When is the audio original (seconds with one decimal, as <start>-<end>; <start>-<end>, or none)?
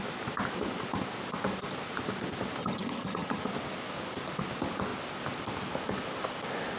0.0-2.6; 3.4-6.8